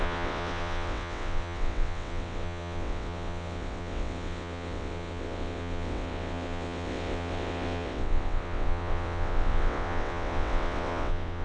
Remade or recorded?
remade